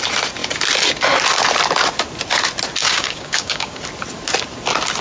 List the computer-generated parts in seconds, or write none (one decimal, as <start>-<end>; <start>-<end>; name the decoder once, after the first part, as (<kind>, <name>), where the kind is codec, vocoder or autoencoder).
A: 2.8-3.8 (codec, DAC)